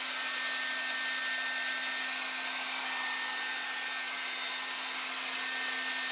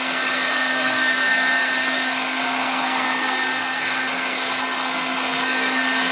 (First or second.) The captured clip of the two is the first